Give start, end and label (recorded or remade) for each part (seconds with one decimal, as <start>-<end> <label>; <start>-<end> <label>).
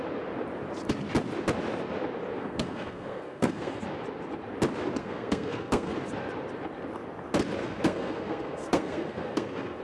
0.0-2.4 recorded; 2.4-3.8 remade; 3.8-5.0 recorded; 5.0-5.9 remade; 5.9-7.6 recorded; 7.6-9.8 remade